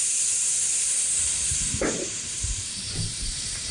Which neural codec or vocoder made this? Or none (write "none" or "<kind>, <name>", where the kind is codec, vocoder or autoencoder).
vocoder, BigVGAN v2